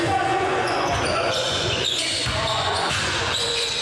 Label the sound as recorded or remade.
remade